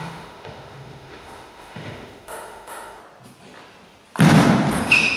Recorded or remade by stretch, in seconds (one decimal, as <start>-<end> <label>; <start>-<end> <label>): 0.0-3.0 remade; 3.0-4.8 recorded; 4.8-5.2 remade